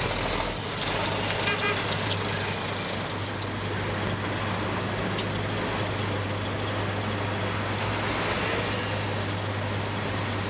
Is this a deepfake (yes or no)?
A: no